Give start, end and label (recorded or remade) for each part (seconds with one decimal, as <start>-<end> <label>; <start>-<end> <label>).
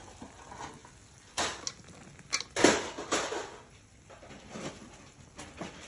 0.0-5.9 recorded